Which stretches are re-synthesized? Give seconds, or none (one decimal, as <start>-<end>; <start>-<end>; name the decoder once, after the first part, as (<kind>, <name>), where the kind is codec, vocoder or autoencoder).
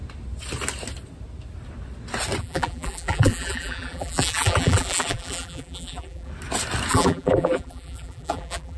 2.4-6.3 (vocoder, BigVGAN v2); 6.9-8.8